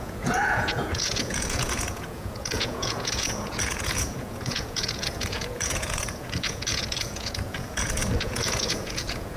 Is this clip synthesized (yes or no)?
yes